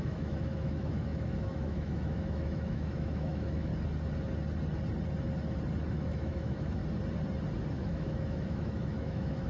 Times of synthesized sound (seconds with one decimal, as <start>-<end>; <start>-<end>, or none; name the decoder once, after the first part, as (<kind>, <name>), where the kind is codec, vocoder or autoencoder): 0.0-3.7 (autoencoder, DAC-VAE); 5.9-6.8; 7.7-9.5